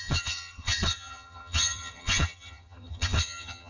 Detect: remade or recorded remade